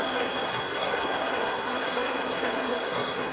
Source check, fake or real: fake